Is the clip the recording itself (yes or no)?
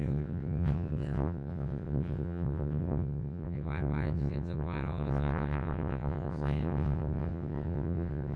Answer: no